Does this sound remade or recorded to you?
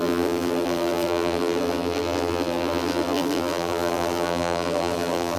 remade